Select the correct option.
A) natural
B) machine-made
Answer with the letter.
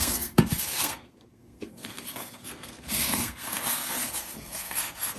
B